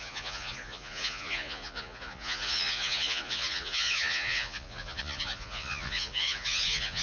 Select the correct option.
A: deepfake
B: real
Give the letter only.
A